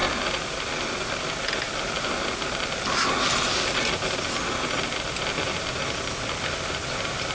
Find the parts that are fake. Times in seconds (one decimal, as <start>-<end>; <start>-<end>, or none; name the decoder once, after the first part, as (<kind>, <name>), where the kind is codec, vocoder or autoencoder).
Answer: none